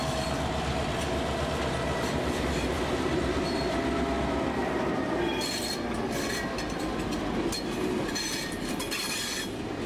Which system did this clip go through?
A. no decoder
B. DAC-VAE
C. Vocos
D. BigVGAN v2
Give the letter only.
D